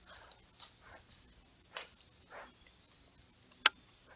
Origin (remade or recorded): recorded